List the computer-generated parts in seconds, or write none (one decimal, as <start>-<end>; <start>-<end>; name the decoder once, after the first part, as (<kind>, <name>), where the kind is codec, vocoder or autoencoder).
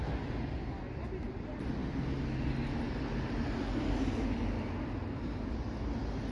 none